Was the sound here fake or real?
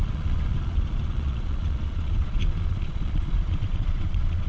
fake